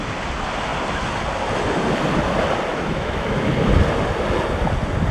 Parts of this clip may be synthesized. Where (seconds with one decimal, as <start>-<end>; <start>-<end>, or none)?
2.7-3.5